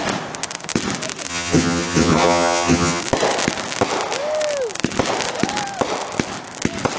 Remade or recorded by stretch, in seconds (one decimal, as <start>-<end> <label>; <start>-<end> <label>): 0.0-1.3 recorded; 1.3-3.0 remade; 3.0-7.0 recorded